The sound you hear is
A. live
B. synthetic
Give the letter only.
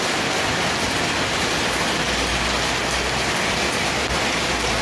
A